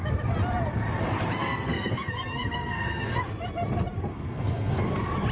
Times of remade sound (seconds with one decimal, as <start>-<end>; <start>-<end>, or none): 1.4-3.2; 4.1-4.8